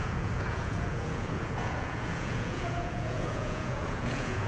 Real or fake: fake